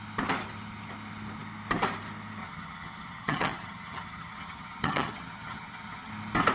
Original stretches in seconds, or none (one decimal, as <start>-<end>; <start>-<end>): 0.0-2.4; 6.1-6.5

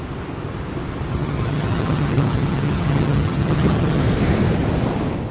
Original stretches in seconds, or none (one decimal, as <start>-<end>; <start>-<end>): 0.0-1.1; 4.0-5.3

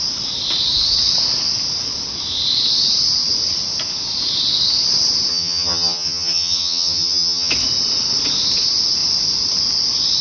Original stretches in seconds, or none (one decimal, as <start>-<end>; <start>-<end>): 0.0-5.3; 7.5-10.2

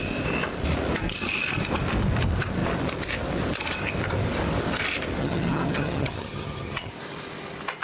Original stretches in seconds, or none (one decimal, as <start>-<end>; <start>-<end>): 0.0-5.2; 6.9-7.8

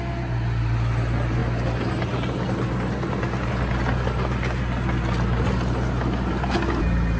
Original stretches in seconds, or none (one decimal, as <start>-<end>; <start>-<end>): 0.0-7.2

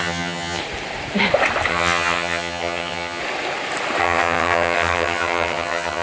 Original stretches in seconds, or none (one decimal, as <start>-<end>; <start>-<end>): 0.6-1.7; 3.2-4.0

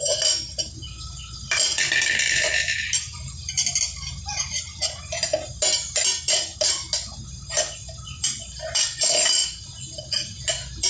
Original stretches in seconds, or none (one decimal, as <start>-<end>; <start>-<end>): 0.0-10.9

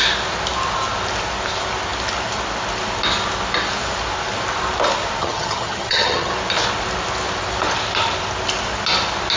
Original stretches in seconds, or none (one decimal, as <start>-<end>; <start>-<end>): 0.0-5.2; 6.3-9.4